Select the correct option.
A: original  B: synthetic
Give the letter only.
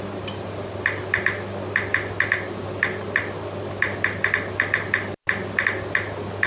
A